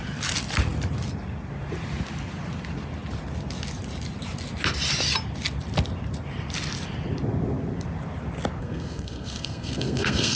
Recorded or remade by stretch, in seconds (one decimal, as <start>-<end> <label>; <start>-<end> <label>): 0.0-8.6 recorded; 8.6-10.4 remade